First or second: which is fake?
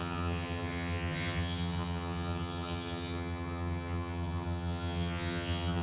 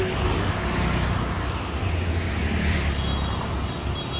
first